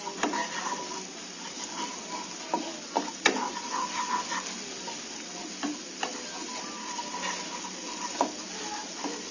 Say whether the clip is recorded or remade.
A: recorded